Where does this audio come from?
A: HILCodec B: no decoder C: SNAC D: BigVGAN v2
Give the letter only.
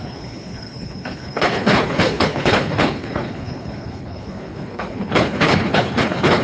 A